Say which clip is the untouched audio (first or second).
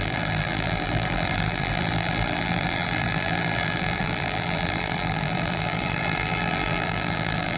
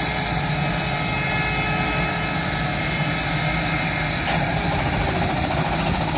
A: second